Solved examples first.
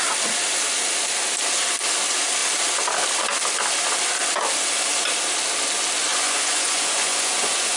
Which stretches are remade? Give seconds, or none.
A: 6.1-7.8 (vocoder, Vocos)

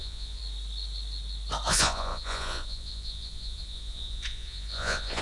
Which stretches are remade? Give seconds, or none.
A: 0.0-0.4 (vocoder, Vocos); 1.7-5.2

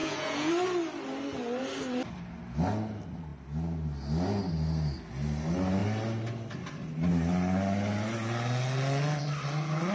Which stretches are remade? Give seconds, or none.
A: 0.0-0.5 (vocoder, Vocos)

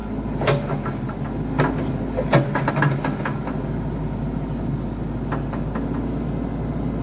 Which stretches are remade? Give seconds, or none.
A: none

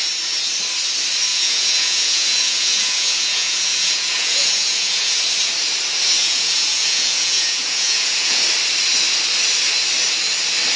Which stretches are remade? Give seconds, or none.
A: 1.3-5.2 (vocoder, Vocos); 6.2-8.4

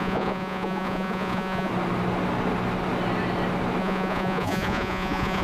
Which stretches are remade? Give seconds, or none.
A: 0.0-1.7 (vocoder, Vocos); 3.8-5.4

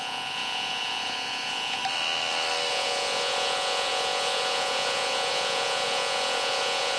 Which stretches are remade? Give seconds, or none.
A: 0.0-1.8 (vocoder, Vocos); 2.7-7.0